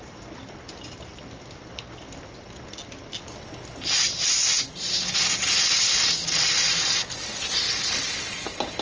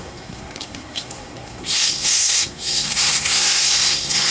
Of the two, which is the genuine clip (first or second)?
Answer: first